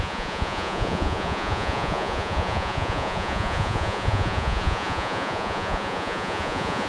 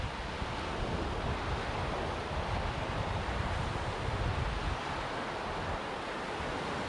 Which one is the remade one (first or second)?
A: first